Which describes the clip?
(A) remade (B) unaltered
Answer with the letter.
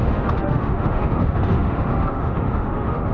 A